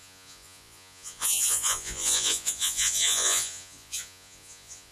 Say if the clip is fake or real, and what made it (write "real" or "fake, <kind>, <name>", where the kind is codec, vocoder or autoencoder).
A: fake, vocoder, Vocos